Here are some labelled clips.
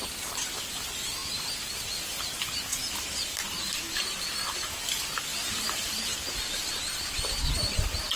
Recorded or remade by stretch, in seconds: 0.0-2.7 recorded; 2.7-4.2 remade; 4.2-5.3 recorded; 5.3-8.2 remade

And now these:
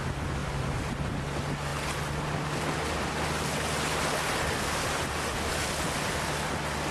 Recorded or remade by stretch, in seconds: 0.0-0.4 recorded; 0.4-1.2 remade; 1.2-6.9 recorded

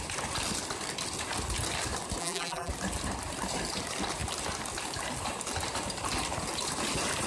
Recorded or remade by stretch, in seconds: 0.0-2.2 recorded; 2.2-2.7 remade; 2.7-7.3 recorded